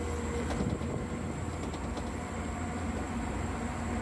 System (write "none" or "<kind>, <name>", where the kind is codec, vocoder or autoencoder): none